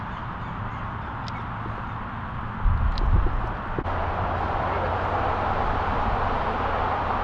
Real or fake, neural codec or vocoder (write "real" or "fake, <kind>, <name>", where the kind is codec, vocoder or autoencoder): real